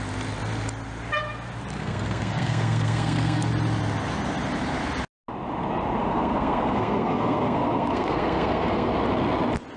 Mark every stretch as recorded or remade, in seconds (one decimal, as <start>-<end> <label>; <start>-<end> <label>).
0.0-1.8 recorded; 1.8-3.5 remade; 3.5-6.0 recorded; 6.0-8.9 remade; 8.9-9.8 recorded